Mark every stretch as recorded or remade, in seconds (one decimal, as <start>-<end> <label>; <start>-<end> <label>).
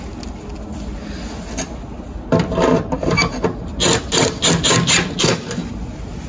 0.0-6.3 recorded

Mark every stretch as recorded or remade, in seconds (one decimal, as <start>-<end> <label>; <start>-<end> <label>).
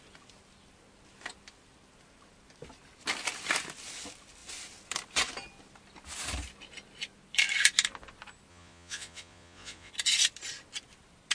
0.0-8.5 recorded; 8.5-9.9 remade; 9.9-11.3 recorded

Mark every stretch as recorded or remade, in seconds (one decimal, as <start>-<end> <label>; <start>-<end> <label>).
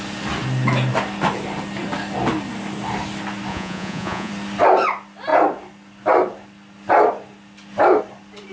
0.0-3.5 recorded; 3.5-4.3 remade; 4.3-8.5 recorded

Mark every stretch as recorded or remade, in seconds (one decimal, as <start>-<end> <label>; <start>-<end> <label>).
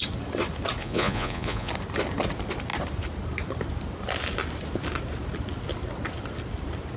0.0-0.8 recorded; 0.8-1.7 remade; 1.7-7.0 recorded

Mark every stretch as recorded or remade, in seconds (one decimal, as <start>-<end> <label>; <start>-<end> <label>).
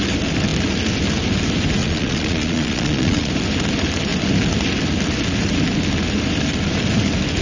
0.0-1.8 recorded; 1.8-3.3 remade; 3.3-7.4 recorded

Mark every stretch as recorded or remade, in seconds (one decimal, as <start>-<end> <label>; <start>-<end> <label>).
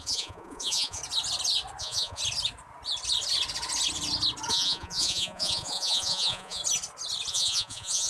0.0-1.0 remade; 1.0-1.8 recorded; 1.8-2.2 remade; 2.2-4.5 recorded; 4.5-6.6 remade; 6.6-7.3 recorded; 7.3-8.1 remade